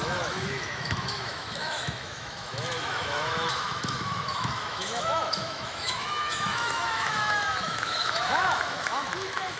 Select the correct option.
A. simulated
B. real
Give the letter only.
A